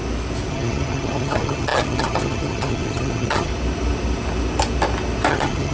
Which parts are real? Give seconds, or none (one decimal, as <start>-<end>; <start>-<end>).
0.0-0.5; 3.5-5.3